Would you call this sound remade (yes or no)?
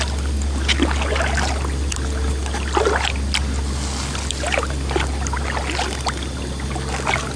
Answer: no